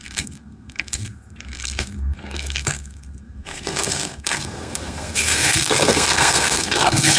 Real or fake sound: fake